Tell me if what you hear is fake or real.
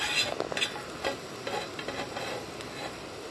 real